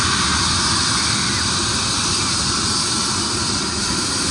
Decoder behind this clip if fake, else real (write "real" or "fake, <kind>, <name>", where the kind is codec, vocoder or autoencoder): real